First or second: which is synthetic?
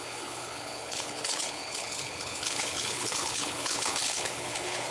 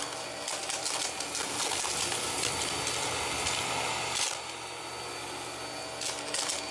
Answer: first